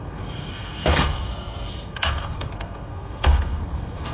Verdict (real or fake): fake